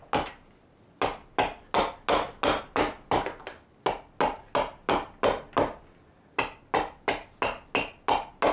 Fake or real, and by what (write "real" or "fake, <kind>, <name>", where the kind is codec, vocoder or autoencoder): real